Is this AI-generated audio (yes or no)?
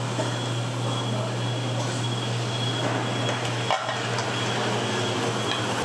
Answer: no